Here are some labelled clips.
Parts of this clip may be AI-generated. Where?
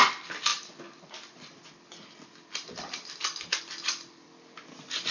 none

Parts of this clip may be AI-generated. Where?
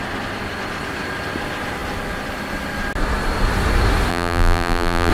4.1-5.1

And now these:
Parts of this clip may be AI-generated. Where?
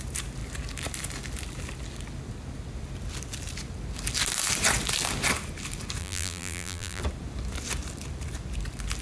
6.0-7.0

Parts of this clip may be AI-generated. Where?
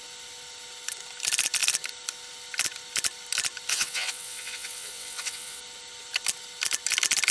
3.7-5.6